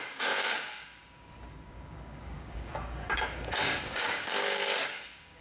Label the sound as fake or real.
fake